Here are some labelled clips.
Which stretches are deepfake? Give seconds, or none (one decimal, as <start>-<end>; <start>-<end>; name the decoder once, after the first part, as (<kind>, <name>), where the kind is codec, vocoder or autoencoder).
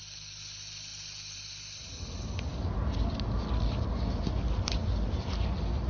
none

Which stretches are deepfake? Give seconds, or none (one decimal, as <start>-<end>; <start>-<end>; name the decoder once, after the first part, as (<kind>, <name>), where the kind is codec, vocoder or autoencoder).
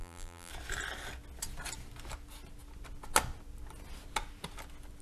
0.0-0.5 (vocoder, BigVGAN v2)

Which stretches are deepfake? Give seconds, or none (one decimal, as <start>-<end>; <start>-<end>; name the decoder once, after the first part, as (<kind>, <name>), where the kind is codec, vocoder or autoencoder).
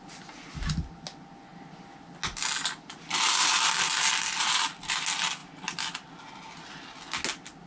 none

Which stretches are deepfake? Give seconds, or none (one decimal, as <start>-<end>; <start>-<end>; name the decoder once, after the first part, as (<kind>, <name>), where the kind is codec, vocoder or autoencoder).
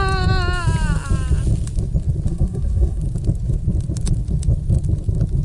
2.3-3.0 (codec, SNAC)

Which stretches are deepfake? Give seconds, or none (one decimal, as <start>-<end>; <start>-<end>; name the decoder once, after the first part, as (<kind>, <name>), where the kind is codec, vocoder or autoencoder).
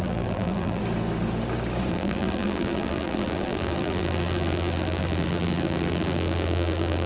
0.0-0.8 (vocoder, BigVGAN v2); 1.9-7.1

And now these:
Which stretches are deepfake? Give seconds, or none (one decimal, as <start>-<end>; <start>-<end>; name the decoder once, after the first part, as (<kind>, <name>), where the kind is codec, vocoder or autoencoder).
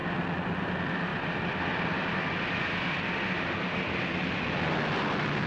1.1-4.4 (vocoder, BigVGAN v2)